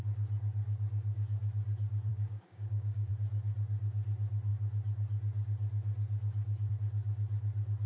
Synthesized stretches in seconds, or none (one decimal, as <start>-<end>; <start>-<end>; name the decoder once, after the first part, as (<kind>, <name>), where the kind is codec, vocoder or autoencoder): 2.1-3.1 (codec, DAC)